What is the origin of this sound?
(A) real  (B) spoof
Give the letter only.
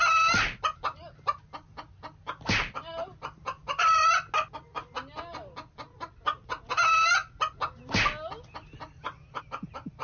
A